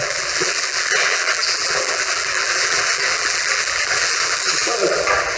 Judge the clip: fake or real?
fake